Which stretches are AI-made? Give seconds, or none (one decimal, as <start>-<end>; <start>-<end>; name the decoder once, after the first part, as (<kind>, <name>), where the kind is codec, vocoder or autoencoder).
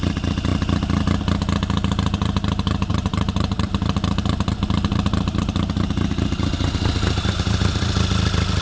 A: 2.9-7.8 (vocoder, BigVGAN v2)